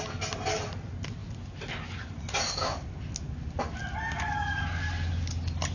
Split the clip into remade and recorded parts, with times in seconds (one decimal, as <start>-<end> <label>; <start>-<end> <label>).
0.0-5.7 recorded